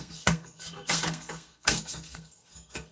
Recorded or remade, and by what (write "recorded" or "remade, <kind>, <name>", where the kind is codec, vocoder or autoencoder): remade, codec, SNAC